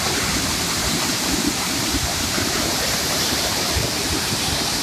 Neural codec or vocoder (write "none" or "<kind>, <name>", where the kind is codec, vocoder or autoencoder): vocoder, BigVGAN v2